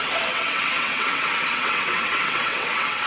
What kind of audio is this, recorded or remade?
remade